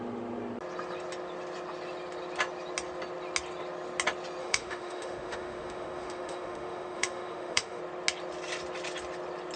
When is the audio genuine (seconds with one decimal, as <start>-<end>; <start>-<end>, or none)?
0.0-4.4; 7.8-9.6